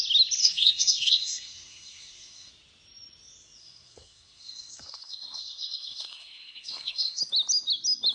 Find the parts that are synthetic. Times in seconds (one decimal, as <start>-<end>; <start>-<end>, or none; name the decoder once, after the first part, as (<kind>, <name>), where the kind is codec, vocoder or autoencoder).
0.4-2.5 (codec, SNAC); 3.6-7.2

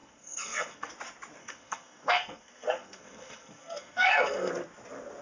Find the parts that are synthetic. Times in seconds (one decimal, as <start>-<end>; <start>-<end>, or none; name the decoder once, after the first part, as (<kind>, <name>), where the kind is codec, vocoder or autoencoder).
0.0-0.9 (codec, SNAC); 1.4-4.5